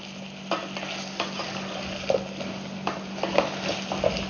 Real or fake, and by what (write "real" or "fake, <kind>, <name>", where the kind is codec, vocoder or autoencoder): real